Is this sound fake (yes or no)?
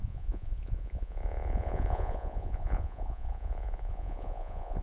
yes